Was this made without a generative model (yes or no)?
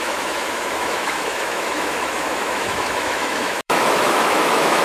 no